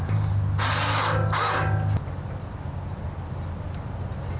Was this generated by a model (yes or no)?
no